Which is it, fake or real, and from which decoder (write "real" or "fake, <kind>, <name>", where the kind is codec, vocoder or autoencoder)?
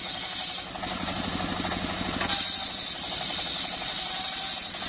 real